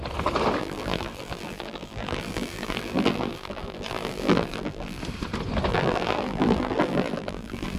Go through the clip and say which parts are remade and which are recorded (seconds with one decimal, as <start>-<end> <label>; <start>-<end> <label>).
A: 0.0-0.6 recorded; 0.6-5.0 remade; 5.0-5.7 recorded; 5.7-7.8 remade